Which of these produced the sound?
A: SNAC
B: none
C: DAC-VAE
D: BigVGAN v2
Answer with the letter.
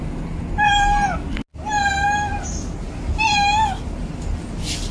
B